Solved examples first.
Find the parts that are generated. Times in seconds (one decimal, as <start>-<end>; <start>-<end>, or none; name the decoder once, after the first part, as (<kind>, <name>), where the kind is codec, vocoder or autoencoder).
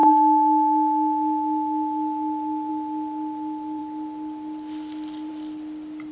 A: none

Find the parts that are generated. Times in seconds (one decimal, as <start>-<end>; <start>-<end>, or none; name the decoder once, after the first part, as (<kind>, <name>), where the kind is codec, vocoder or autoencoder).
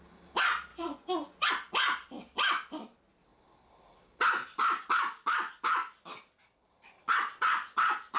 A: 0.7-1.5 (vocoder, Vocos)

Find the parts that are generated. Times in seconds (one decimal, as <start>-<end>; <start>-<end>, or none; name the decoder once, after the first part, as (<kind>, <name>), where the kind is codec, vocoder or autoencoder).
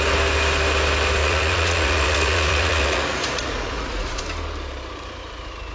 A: 1.2-4.2 (vocoder, Vocos)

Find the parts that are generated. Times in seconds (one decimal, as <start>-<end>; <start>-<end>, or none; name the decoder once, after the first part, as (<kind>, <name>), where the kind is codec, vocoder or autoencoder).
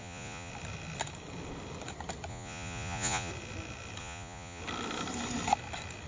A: 0.0-0.5 (vocoder, Vocos); 2.3-3.3; 4.0-4.6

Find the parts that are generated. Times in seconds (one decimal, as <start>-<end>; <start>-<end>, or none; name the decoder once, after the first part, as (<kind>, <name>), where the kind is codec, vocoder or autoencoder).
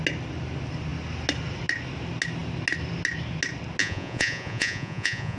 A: 3.8-5.4 (vocoder, Vocos)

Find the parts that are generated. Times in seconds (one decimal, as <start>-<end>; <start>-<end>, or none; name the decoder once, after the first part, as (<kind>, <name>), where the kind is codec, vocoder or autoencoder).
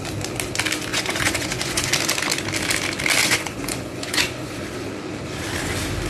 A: 0.9-1.9 (vocoder, Vocos); 3.2-4.6